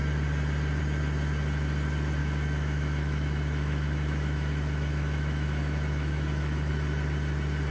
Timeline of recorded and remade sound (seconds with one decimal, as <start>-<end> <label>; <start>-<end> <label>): 0.0-2.2 recorded; 2.2-6.7 remade; 6.7-7.7 recorded